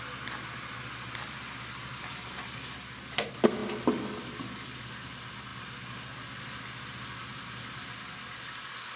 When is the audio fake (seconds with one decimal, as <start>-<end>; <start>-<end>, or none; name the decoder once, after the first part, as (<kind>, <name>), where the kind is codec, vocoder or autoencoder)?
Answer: none